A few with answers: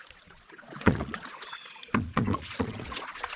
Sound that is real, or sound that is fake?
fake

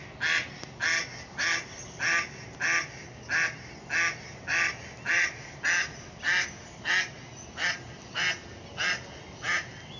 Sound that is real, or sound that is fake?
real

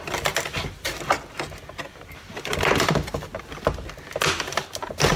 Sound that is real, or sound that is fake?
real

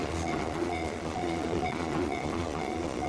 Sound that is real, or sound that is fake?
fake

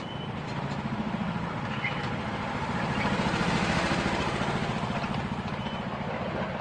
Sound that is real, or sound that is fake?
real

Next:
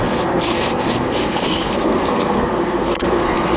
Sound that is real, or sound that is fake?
fake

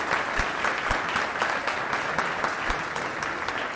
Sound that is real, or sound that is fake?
real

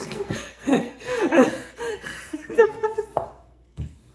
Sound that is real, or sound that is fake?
fake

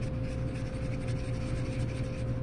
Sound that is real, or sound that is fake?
real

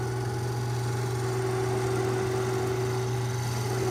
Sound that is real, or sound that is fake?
real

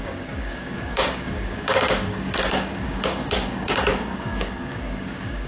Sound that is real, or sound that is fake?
fake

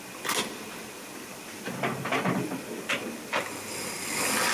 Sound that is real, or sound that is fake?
real